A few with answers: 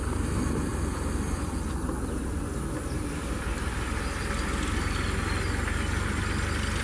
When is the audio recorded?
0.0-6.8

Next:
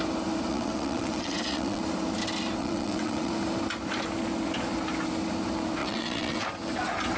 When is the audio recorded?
0.0-0.5; 1.8-2.6; 3.3-5.8; 6.4-7.2

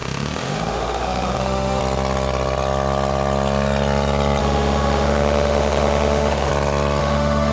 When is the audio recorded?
1.8-4.4; 6.5-7.0

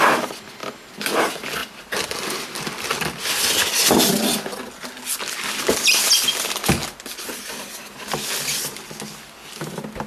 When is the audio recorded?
0.0-10.1

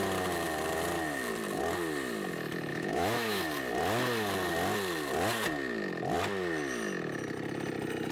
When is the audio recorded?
0.0-2.7; 3.4-8.1

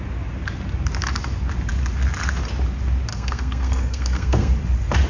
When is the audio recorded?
0.0-3.1; 4.6-5.1